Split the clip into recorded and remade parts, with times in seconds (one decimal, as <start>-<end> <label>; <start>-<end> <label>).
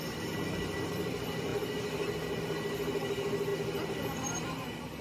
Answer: 0.0-5.0 recorded